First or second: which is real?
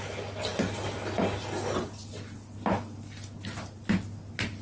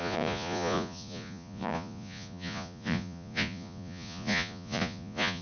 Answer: first